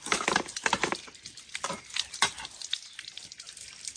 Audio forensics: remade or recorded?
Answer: recorded